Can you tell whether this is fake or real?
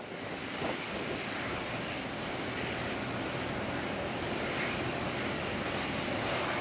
real